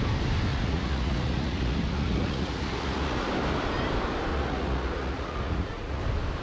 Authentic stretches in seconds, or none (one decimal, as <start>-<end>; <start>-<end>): 0.0-0.5; 3.3-4.3; 6.0-6.4